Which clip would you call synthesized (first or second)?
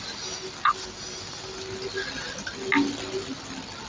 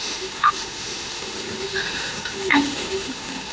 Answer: second